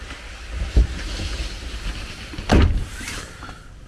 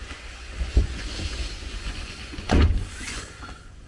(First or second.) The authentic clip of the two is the first